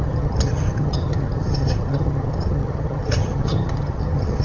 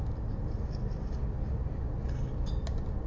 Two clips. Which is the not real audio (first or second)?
first